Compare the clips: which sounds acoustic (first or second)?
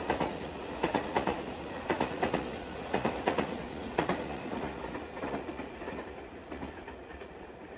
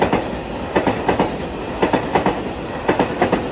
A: second